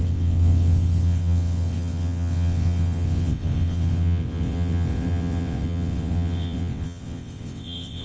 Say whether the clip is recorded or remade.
remade